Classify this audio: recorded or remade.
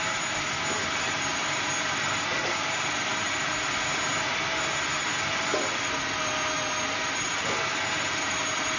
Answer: recorded